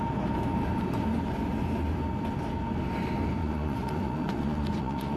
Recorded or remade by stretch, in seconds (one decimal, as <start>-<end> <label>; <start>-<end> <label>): 0.0-3.4 recorded; 3.4-5.2 remade